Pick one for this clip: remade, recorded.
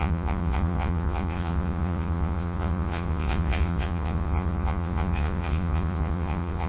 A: remade